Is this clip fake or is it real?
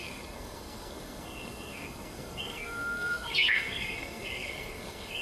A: fake